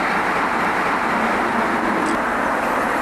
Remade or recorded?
recorded